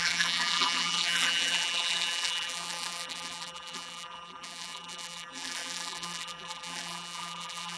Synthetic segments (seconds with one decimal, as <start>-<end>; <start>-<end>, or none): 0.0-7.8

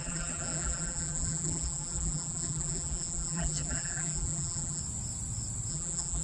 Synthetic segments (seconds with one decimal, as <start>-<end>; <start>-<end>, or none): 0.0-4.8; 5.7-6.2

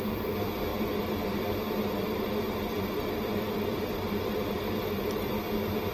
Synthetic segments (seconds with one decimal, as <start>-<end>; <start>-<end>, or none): 0.7-1.4; 1.8-5.3

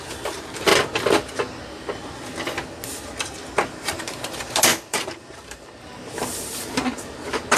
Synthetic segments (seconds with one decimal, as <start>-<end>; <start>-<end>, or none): 0.0-0.7; 3.7-7.6